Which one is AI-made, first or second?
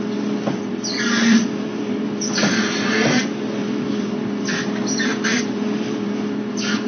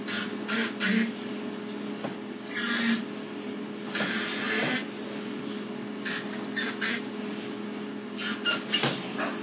first